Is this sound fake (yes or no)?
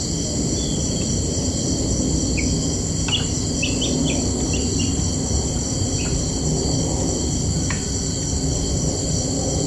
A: no